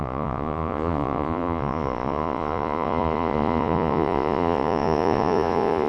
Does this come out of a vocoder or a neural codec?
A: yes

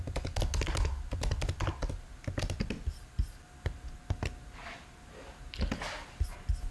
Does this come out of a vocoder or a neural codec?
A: no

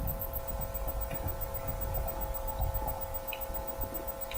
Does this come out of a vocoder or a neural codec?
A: no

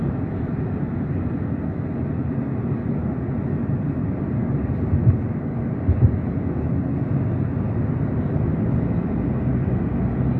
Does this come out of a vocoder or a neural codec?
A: no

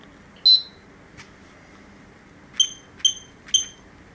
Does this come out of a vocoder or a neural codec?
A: no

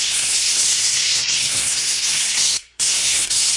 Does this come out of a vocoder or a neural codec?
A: yes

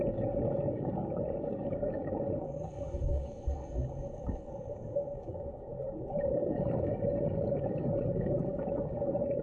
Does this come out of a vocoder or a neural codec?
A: yes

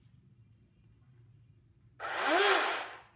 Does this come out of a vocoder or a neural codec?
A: yes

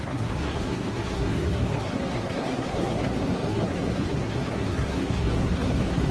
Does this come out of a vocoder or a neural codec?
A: yes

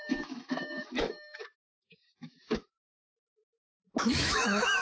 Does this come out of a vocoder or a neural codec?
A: yes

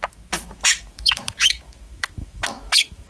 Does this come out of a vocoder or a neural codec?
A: yes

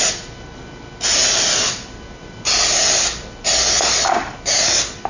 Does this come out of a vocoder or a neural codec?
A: no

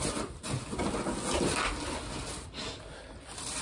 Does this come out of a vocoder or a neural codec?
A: no